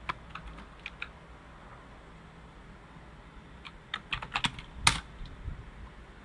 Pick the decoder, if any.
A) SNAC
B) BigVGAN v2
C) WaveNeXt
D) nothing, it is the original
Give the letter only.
D